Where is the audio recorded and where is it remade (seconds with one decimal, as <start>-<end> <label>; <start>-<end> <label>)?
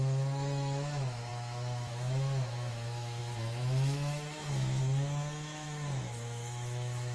0.0-7.1 remade